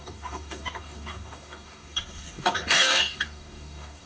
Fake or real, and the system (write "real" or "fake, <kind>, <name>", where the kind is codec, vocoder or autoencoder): fake, codec, DAC